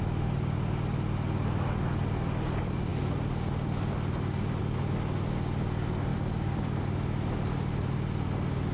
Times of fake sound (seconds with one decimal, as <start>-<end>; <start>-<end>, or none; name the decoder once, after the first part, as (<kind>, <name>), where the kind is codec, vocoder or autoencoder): none